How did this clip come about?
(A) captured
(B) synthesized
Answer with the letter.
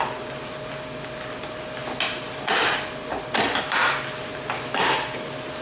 A